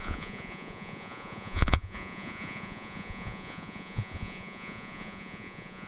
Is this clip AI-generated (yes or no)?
yes